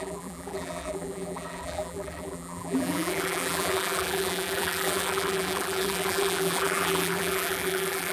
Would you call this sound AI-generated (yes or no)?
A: yes